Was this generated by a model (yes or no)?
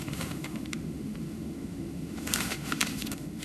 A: yes